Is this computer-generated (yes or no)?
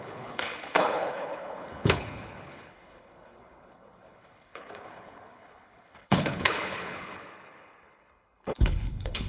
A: yes